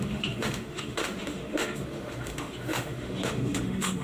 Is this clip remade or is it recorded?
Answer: remade